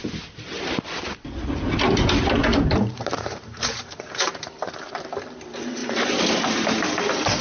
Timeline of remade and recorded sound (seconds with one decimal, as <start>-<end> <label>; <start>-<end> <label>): 0.0-2.4 recorded; 2.4-5.0 remade; 5.0-5.8 recorded; 5.8-7.0 remade; 7.0-7.4 recorded